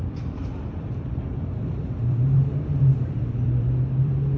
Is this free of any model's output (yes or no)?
no